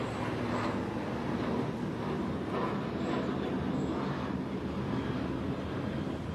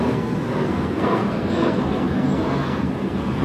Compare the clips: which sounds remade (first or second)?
second